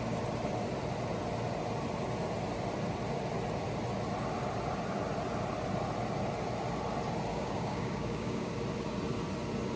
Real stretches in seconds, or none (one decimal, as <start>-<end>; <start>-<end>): 0.0-7.3; 8.5-9.8